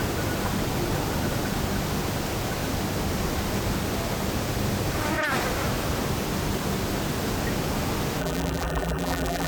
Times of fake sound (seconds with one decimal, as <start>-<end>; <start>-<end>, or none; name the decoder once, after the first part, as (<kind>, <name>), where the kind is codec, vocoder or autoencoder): 8.2-9.5 (vocoder, BigVGAN v2)